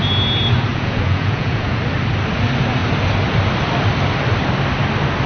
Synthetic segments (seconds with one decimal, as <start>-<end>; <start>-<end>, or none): 0.7-1.8